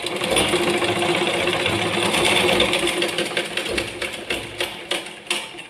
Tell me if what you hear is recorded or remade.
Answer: recorded